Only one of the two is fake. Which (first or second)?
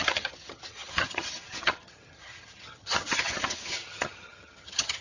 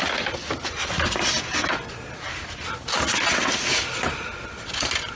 first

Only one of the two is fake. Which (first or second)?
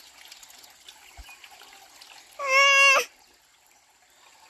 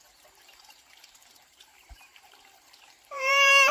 second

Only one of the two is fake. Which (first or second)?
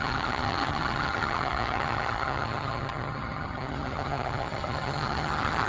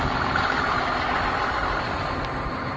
first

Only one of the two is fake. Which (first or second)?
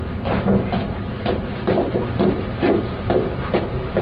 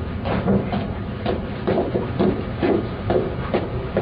second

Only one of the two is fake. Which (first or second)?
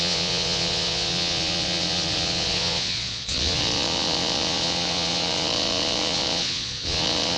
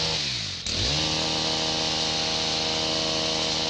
first